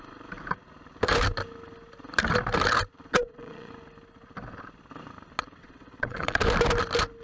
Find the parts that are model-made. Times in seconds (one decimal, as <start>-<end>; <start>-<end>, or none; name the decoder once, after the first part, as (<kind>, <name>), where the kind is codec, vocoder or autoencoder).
3.1-3.7 (vocoder, WaveNeXt); 5.6-6.4